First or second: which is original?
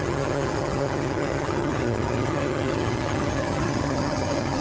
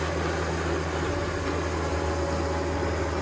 second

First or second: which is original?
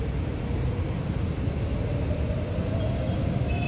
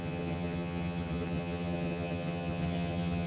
first